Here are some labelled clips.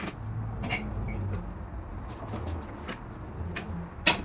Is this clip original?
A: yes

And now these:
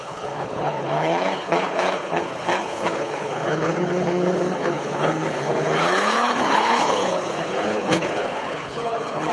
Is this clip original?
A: no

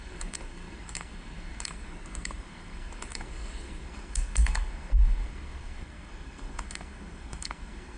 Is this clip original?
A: no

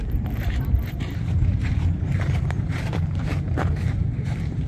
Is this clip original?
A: no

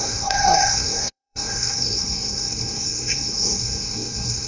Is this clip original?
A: no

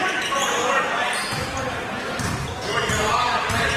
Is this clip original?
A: no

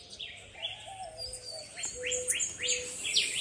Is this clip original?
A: yes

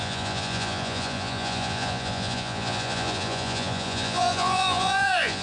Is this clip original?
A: no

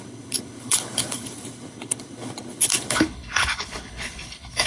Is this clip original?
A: no